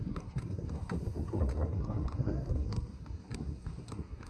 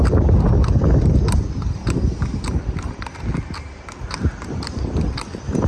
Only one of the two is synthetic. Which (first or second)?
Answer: first